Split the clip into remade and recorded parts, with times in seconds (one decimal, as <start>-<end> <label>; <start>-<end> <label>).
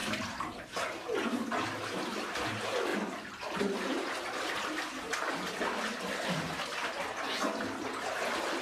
0.0-8.6 recorded